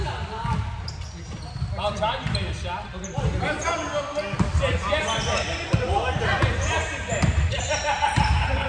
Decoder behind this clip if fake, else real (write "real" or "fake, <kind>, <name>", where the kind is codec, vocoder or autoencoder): real